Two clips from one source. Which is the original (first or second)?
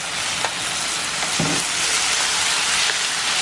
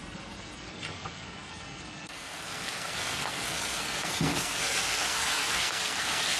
first